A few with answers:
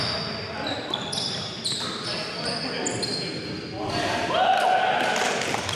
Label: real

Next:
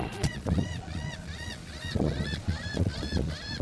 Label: fake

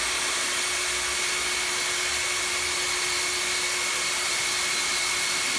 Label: real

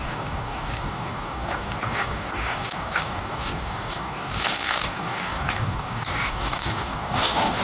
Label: fake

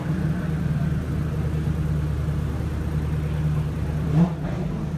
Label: real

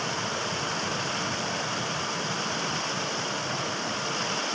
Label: real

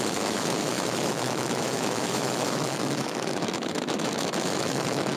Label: fake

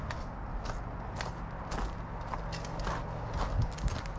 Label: real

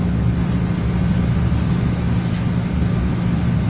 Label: real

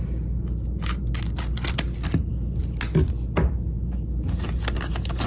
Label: real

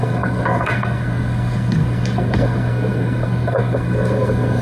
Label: fake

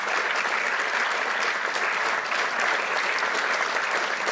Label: real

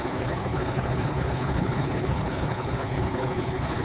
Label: fake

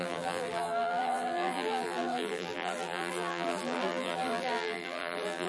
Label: fake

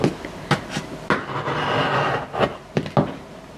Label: real